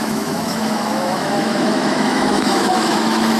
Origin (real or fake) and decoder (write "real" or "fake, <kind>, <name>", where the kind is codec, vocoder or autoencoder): fake, autoencoder, DAC-VAE